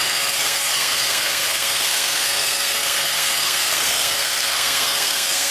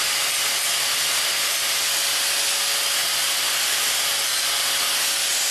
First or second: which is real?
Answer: second